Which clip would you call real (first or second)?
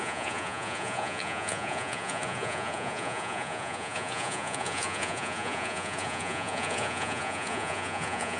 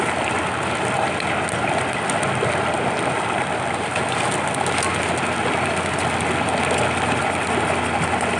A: second